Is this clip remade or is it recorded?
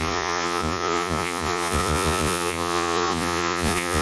remade